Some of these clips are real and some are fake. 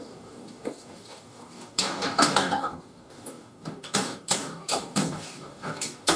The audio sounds fake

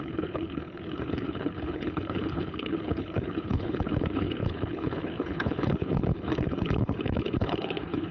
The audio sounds fake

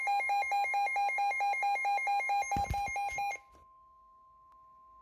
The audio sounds real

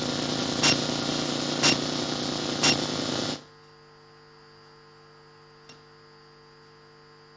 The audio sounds real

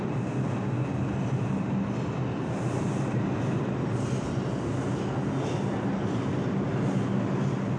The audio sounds real